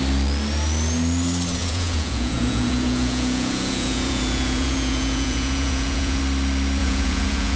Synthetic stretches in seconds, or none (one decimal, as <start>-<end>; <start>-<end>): 1.6-6.2; 6.8-7.6